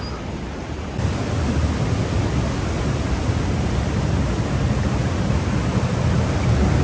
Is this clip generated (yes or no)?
no